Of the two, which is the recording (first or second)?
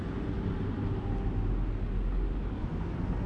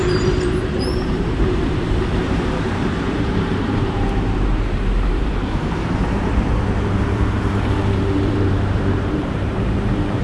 first